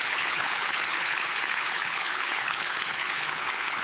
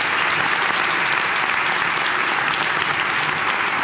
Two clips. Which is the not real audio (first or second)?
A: first